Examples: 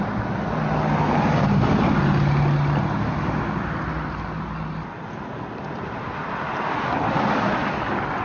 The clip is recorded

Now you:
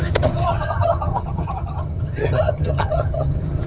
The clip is remade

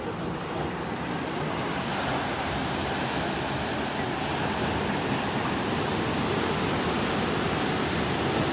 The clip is recorded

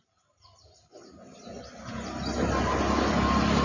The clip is recorded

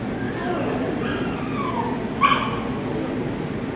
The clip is recorded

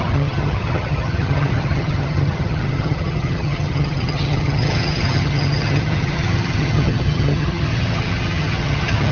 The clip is remade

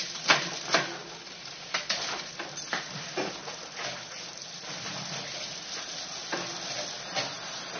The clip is recorded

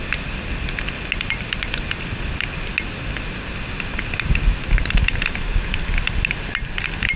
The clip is recorded